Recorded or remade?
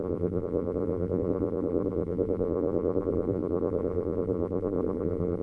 remade